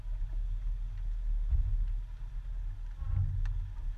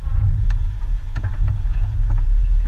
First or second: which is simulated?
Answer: second